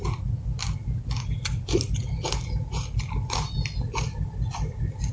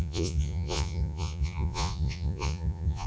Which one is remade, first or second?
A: second